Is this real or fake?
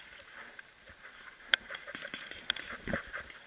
fake